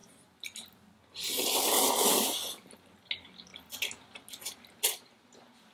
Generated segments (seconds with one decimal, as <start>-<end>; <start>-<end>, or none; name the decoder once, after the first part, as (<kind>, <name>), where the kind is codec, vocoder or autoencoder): none